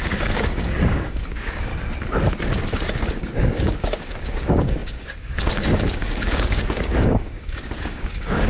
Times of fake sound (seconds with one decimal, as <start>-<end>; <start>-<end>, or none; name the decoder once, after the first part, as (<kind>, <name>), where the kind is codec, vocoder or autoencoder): 0.0-1.7 (codec, DAC); 3.1-8.5